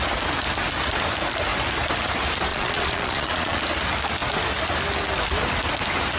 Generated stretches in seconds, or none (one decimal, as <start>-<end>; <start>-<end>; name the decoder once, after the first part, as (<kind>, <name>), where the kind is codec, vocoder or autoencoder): 2.5-3.6 (vocoder, Vocos)